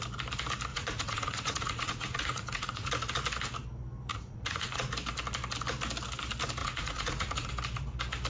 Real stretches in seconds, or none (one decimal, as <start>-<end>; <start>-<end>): 0.0-0.7; 2.9-4.1; 4.9-6.6; 7.5-8.3